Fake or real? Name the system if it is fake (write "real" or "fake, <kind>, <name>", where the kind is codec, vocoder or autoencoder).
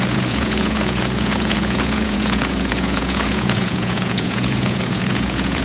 fake, vocoder, Vocos